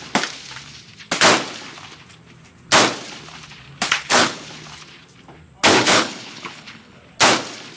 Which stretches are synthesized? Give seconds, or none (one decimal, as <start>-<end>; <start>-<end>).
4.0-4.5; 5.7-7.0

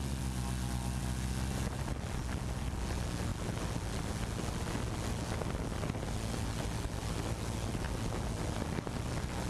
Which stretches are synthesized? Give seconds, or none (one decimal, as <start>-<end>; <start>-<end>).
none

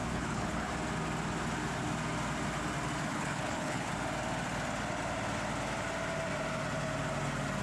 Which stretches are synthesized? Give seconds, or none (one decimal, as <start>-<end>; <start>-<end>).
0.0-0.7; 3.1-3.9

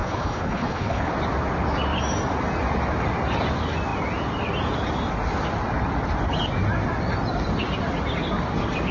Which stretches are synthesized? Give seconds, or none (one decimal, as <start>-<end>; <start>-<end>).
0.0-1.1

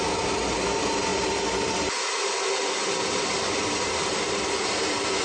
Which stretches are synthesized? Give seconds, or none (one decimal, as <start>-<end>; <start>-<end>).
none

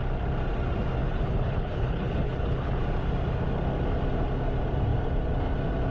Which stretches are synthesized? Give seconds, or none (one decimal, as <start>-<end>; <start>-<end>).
1.0-2.8

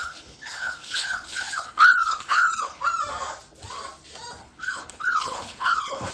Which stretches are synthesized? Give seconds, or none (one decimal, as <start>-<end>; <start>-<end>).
0.0-2.8; 4.4-6.1